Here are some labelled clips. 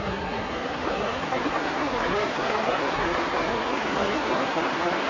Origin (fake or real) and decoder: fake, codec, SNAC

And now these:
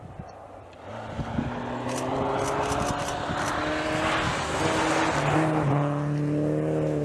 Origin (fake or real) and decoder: real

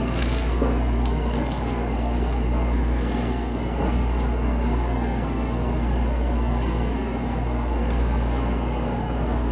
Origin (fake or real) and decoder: fake, codec, SNAC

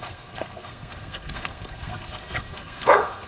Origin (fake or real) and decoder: fake, codec, SNAC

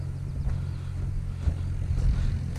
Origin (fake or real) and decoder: real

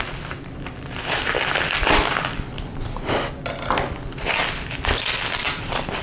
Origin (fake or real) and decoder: real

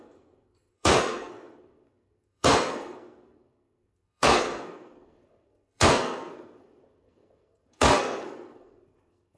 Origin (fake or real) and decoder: fake, codec, SNAC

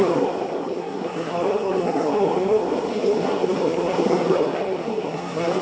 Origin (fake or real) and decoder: fake, codec, SNAC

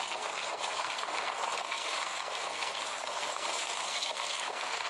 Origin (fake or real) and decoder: fake, codec, SNAC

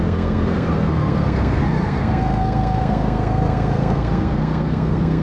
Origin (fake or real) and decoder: fake, codec, SNAC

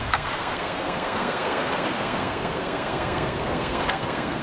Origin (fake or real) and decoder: fake, codec, SNAC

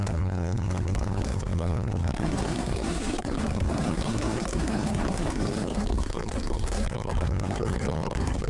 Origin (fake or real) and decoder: fake, codec, SNAC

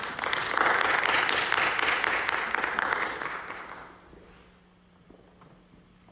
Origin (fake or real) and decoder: real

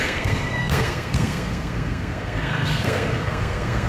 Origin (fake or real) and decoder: fake, codec, SNAC